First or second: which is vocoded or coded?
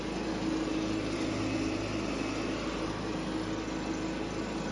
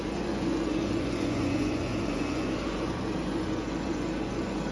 second